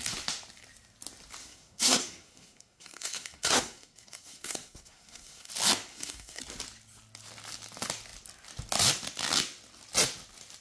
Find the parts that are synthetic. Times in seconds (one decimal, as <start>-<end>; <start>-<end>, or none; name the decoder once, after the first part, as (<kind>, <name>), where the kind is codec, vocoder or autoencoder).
1.4-5.5 (codec, SNAC); 5.9-6.4

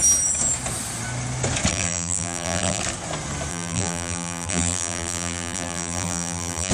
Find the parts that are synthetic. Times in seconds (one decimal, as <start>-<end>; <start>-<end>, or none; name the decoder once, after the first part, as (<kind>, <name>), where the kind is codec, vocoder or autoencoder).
1.7-2.8 (vocoder, BigVGAN v2); 3.5-6.7

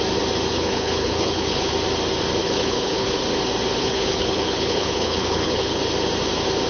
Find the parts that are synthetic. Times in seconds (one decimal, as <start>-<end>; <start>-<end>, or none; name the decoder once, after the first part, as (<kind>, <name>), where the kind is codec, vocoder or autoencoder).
0.5-1.7 (codec, HILCodec); 2.4-3.2; 3.8-5.8

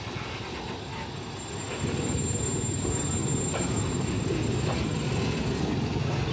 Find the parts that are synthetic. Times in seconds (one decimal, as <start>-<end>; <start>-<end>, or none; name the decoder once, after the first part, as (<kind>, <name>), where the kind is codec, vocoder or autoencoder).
0.9-2.4 (vocoder, BigVGAN v2)

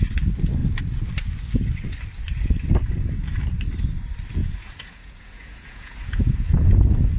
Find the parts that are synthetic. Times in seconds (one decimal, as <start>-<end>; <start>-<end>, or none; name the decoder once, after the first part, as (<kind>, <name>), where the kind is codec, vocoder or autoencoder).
4.4-6.6 (vocoder, Vocos)